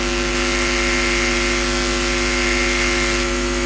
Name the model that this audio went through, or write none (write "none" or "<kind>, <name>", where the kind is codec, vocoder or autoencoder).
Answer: none